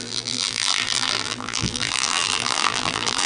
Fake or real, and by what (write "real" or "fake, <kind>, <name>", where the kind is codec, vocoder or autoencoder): fake, vocoder, BigVGAN v2